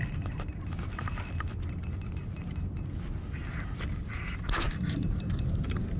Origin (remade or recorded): recorded